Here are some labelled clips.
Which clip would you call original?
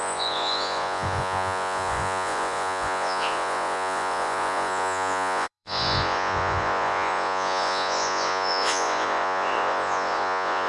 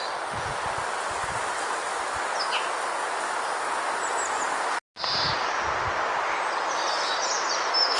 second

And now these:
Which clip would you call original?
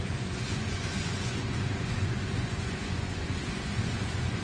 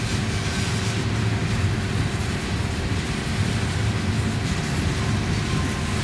second